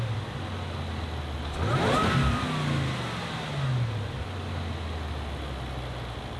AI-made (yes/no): no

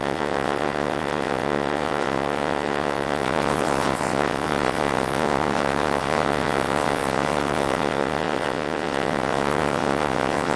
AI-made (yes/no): yes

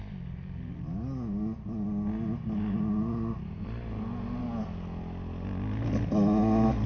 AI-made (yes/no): no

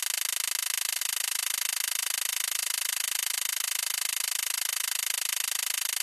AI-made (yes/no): no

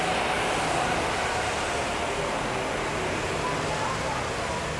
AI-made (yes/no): no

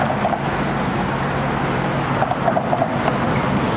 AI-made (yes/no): no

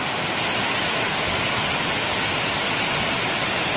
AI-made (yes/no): no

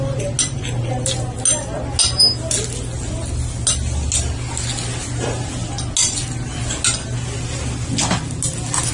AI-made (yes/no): no